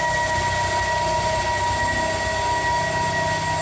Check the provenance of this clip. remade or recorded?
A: recorded